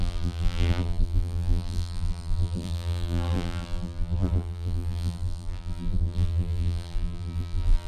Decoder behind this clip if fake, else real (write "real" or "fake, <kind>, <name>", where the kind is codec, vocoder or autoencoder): fake, vocoder, BigVGAN v2